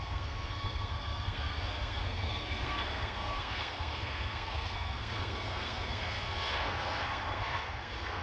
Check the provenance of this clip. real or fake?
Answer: fake